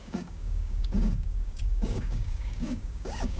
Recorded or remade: remade